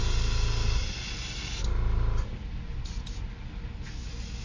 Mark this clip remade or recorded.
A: recorded